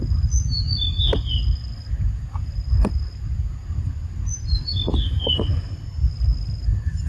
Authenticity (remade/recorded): recorded